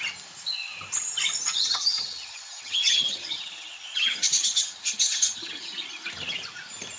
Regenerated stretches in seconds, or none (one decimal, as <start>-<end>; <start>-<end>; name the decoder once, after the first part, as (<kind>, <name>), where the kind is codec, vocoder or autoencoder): 1.6-5.7 (vocoder, HiFi-GAN)